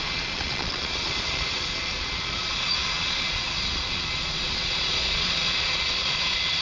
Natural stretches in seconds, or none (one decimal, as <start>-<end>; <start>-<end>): none